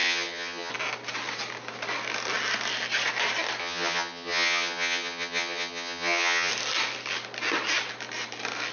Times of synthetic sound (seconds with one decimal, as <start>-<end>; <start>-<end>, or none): 0.0-0.7; 3.6-6.5